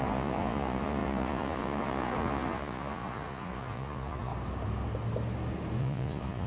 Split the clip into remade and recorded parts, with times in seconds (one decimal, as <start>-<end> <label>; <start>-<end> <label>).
0.0-4.3 remade; 4.3-5.8 recorded; 5.8-6.5 remade